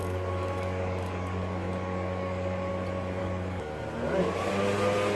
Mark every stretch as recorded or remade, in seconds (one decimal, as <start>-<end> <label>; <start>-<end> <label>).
0.0-2.7 remade; 2.7-3.2 recorded; 3.2-3.8 remade; 3.8-5.2 recorded